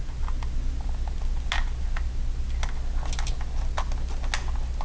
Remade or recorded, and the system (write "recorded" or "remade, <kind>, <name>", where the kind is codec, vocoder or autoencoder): recorded